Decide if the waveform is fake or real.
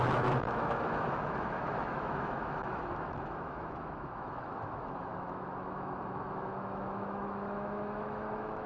fake